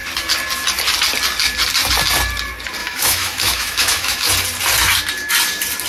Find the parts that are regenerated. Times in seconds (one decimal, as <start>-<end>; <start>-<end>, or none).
2.8-4.3